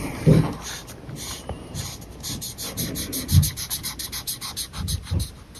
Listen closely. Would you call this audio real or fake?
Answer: real